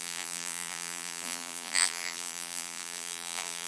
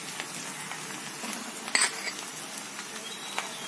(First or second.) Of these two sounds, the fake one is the first